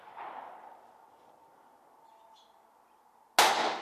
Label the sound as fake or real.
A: real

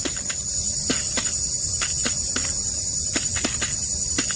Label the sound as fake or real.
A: real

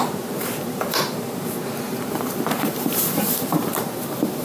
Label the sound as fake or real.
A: fake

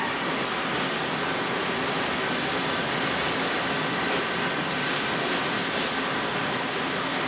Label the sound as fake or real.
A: real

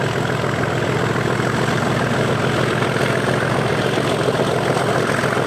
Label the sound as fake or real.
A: real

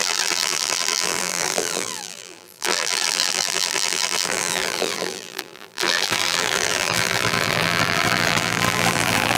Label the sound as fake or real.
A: fake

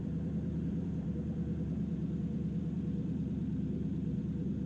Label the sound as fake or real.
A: fake